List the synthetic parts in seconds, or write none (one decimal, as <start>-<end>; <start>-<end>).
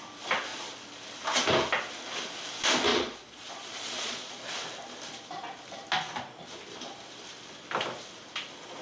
2.9-4.3